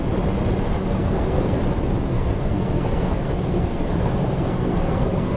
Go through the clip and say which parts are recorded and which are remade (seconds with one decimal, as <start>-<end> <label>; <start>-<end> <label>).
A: 0.0-0.7 recorded; 0.7-1.6 remade; 1.6-2.1 recorded; 2.1-5.4 remade